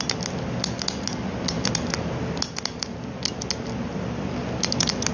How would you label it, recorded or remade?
recorded